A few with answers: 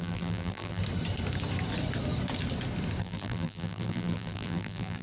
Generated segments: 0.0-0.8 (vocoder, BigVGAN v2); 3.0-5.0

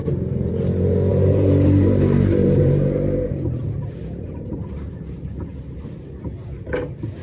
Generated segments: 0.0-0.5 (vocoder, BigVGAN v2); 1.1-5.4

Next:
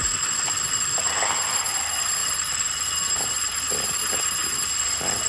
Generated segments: none

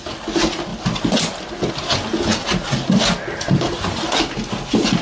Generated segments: 0.7-1.7 (vocoder, BigVGAN v2); 2.3-4.1

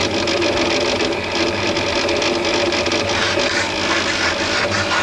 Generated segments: none

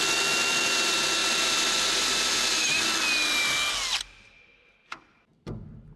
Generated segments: 1.2-2.9 (vocoder, BigVGAN v2); 5.3-6.0

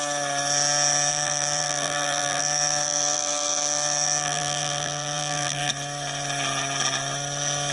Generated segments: 1.1-5.7 (vocoder, BigVGAN v2)